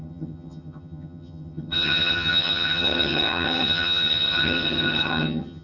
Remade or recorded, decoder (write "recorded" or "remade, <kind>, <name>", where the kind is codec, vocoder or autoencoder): remade, vocoder, HiFi-GAN